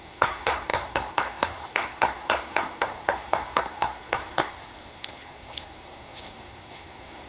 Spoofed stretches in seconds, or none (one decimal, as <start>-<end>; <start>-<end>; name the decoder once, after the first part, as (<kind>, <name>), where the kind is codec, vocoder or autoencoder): 0.0-7.3 (codec, SNAC)